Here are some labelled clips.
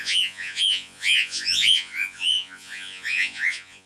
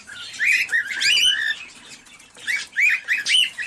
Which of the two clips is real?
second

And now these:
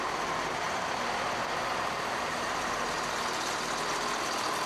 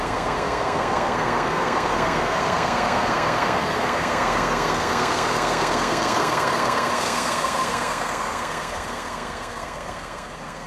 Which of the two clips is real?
first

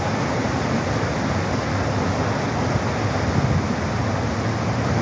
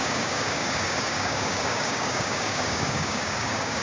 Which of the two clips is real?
first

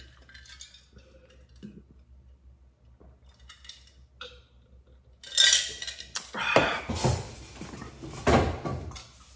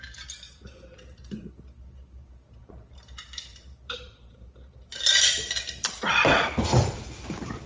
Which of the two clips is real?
first